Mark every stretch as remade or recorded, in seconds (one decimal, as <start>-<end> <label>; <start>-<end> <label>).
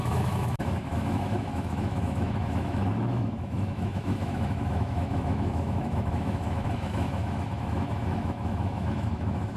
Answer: 0.0-9.6 remade